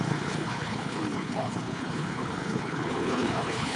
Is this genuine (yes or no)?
no